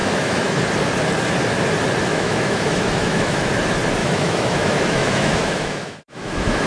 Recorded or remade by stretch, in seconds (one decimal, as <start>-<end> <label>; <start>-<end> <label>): 0.0-0.6 remade; 0.6-2.1 recorded; 2.1-3.5 remade; 3.5-4.0 recorded; 4.0-6.7 remade

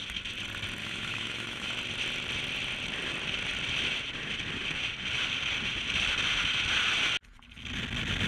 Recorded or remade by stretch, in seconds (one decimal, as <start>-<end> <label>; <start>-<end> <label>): 0.0-0.8 recorded; 0.8-1.7 remade; 1.7-8.3 recorded

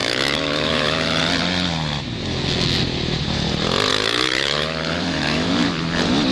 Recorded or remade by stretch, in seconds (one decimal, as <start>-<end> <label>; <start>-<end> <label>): 0.0-1.2 remade; 1.2-3.9 recorded; 3.9-5.5 remade; 5.5-6.3 recorded